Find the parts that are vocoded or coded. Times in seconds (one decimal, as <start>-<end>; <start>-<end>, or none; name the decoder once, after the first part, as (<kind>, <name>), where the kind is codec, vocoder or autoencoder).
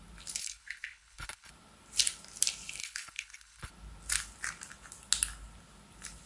0.4-1.5 (codec, HILCodec); 2.8-3.7